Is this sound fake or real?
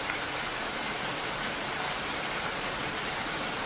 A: fake